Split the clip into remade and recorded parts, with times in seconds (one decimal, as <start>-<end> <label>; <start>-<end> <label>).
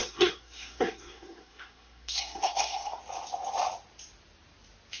0.0-3.0 remade; 3.0-5.0 recorded